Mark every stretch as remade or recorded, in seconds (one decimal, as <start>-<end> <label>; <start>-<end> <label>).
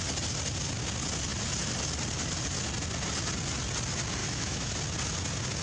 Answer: 0.0-4.2 recorded; 4.2-4.7 remade; 4.7-5.6 recorded